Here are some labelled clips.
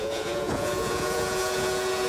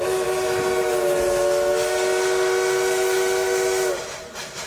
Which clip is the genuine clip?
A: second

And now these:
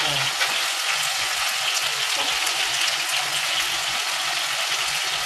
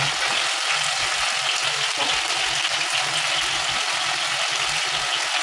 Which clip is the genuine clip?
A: second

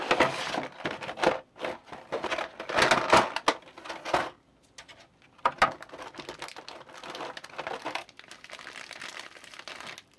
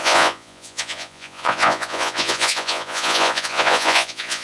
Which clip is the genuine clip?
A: first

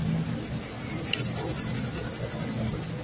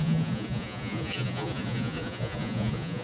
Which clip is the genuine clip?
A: first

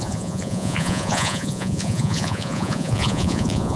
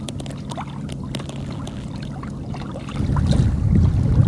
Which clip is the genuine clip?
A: second